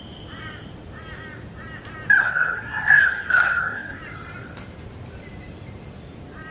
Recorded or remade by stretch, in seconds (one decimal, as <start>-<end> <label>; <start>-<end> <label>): 0.0-2.2 recorded; 2.2-4.0 remade; 4.0-6.5 recorded